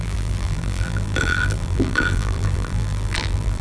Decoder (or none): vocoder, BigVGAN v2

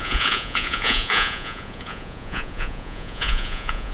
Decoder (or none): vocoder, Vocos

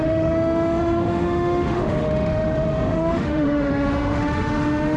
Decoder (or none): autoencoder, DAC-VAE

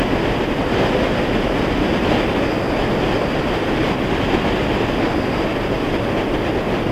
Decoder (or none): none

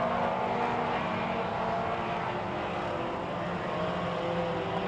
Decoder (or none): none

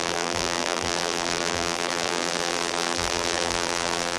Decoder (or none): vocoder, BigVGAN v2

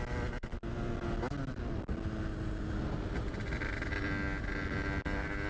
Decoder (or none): none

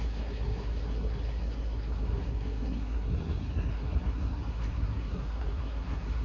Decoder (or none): codec, SNAC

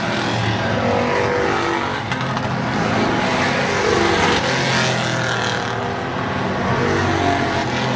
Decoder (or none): none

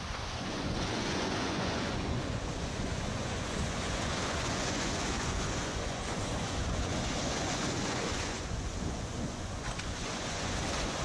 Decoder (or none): vocoder, Vocos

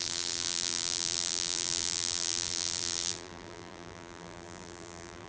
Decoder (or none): vocoder, BigVGAN v2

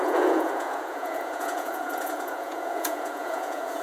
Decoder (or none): vocoder, Vocos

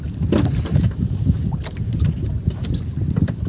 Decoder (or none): vocoder, BigVGAN v2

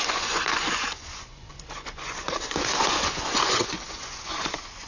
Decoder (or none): vocoder, Vocos